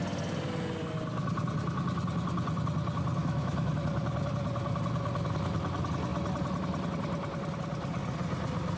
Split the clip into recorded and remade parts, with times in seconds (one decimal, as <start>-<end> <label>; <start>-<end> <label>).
0.0-3.2 recorded; 3.2-3.7 remade; 3.7-8.8 recorded